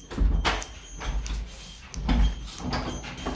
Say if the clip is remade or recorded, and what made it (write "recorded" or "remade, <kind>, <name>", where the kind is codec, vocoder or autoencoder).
recorded